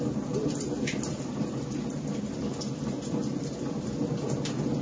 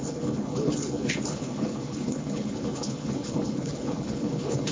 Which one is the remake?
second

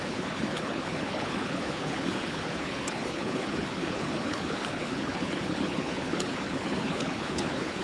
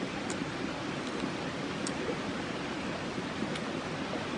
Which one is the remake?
first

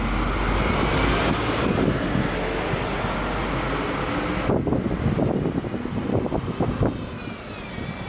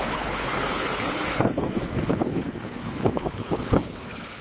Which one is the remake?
second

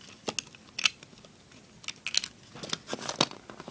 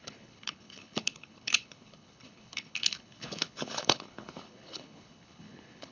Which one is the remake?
second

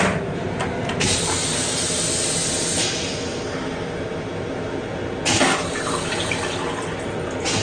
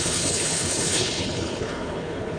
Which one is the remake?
second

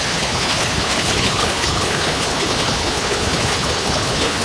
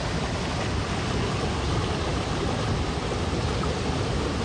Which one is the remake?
first